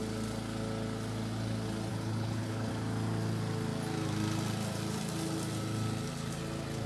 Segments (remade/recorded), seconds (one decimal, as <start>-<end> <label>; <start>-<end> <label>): 0.0-1.9 recorded; 1.9-2.7 remade; 2.7-6.9 recorded